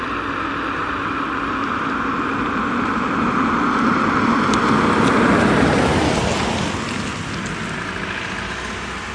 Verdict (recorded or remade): recorded